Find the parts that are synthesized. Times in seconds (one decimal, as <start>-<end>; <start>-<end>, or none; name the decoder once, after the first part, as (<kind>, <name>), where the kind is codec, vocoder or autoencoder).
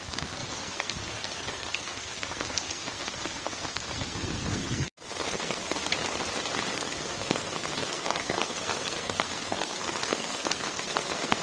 0.0-5.8 (codec, SNAC); 6.7-11.4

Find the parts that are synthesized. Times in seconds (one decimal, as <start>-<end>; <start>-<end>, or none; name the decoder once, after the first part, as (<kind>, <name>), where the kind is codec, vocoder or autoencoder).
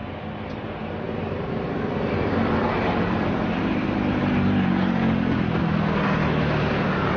1.3-5.6 (vocoder, BigVGAN v2)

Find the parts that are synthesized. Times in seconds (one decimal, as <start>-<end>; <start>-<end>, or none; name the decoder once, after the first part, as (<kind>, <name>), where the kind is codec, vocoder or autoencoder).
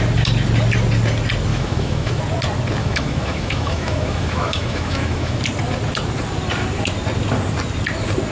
1.5-2.2 (autoencoder, DAC-VAE); 2.8-5.4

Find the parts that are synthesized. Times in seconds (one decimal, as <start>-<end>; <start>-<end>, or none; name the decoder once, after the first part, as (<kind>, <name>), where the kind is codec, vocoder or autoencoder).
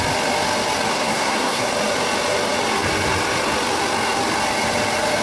0.9-1.7 (codec, SNAC)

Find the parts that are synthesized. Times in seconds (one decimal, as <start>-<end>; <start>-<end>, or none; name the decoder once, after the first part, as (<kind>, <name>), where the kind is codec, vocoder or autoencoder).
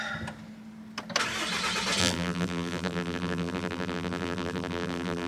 2.0-5.3 (vocoder, BigVGAN v2)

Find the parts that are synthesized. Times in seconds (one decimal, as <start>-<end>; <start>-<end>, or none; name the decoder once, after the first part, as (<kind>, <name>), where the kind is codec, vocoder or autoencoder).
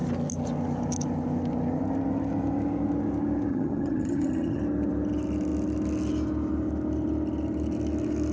3.5-4.6 (vocoder, HiFi-GAN)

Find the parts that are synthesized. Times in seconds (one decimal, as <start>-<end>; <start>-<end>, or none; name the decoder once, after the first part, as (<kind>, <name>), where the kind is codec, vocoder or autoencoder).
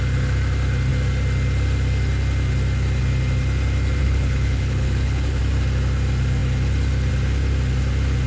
4.0-5.4 (codec, HILCodec)